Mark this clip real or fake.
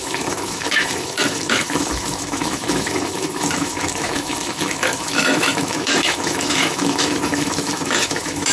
fake